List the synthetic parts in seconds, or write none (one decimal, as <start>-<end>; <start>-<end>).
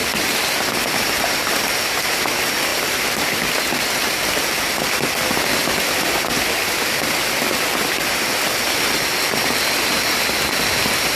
none